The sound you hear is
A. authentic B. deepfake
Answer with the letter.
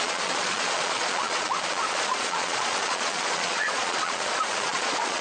B